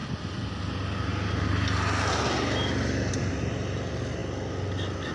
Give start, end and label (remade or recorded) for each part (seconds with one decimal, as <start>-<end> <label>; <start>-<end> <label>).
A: 0.0-5.1 recorded